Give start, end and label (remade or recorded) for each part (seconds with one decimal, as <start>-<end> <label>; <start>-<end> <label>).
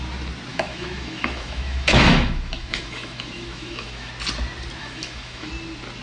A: 0.0-0.5 recorded; 0.5-4.1 remade; 4.1-4.8 recorded; 4.8-5.5 remade; 5.5-6.0 recorded